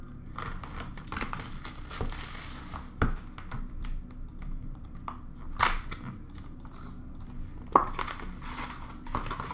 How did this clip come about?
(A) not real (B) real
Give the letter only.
B